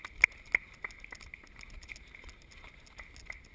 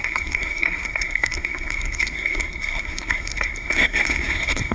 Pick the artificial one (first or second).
second